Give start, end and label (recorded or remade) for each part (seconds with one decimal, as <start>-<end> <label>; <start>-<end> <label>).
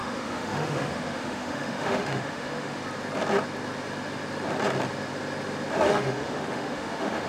0.0-2.8 remade; 2.8-5.7 recorded; 5.7-7.3 remade